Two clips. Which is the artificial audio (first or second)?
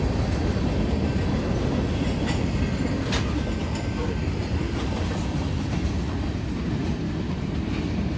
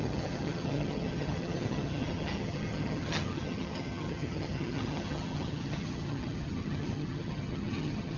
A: second